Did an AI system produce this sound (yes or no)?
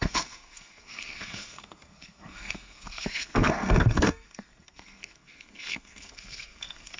yes